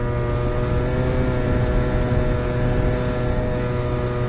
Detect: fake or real real